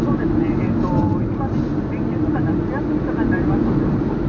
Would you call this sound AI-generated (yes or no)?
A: no